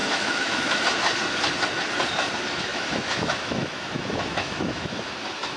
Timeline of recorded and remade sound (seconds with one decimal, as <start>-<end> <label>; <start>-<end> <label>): 0.0-0.8 remade; 0.8-2.7 recorded; 2.7-5.6 remade